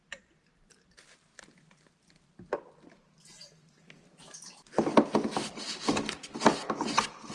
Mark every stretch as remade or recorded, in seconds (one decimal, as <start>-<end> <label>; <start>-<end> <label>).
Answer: 0.0-7.3 recorded